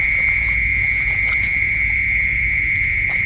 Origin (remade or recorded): remade